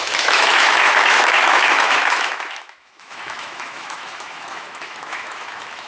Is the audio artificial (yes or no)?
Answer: yes